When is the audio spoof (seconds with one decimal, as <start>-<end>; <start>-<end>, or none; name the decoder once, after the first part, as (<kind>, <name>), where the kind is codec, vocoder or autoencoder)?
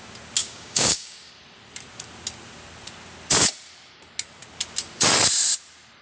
0.4-1.3 (codec, DAC)